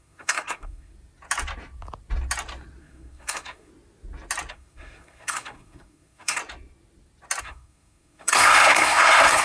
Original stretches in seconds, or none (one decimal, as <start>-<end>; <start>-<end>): 0.9-2.8; 3.7-4.5; 6.4-7.4